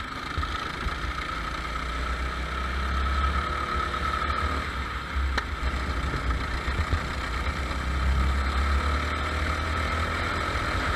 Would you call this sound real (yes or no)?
yes